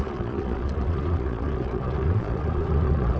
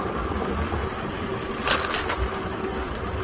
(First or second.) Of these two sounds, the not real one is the first